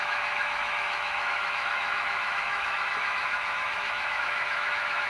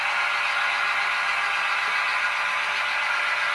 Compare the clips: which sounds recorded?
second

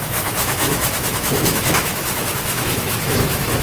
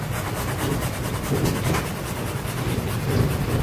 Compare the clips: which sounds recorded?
second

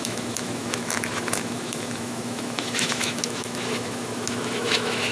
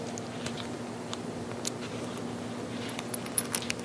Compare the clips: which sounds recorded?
second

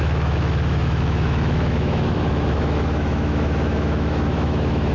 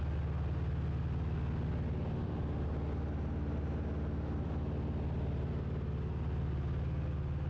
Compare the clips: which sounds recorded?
second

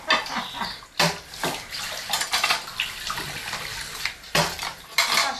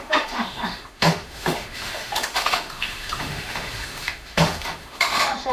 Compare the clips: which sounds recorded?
first